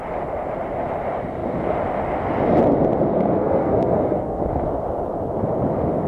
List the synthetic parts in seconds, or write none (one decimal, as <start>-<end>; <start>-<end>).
3.1-4.4